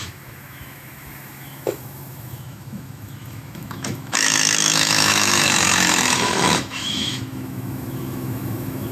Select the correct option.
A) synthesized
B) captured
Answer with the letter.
A